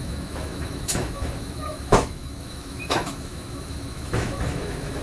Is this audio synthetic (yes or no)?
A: yes